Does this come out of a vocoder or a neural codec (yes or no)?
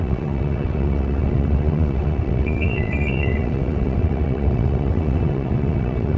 yes